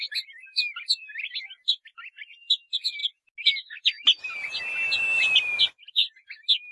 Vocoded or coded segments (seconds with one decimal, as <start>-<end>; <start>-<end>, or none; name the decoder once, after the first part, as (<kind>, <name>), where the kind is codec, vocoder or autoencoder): none